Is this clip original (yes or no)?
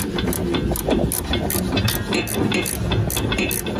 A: yes